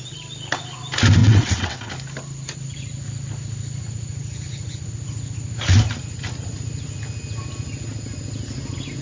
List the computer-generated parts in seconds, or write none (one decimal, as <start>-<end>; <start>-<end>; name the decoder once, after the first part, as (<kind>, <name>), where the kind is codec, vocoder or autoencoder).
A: 1.2-1.9 (vocoder, WaveNeXt)